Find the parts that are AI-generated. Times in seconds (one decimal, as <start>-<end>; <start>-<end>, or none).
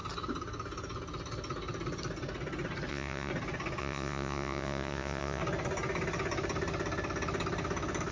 2.9-3.3; 3.8-5.4